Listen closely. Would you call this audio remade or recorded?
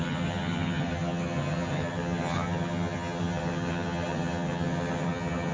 remade